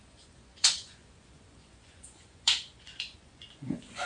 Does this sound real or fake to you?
fake